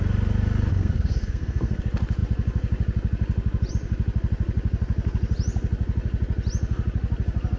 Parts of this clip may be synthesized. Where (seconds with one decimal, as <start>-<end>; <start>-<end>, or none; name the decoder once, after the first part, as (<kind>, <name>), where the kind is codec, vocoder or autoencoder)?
0.7-1.8 (codec, SNAC)